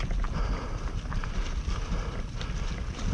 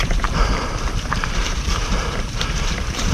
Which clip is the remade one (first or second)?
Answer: second